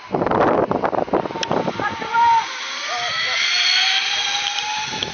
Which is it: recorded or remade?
recorded